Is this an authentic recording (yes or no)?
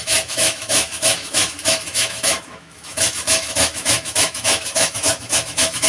no